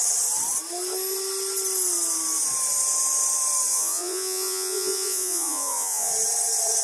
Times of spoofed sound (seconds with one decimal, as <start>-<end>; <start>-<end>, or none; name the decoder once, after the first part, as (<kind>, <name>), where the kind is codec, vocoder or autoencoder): 3.7-6.1 (vocoder, Vocos)